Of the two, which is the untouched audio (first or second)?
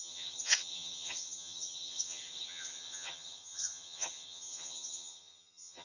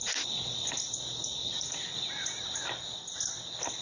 second